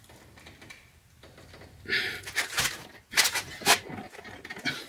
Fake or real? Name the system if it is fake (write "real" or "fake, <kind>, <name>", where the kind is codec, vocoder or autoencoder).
real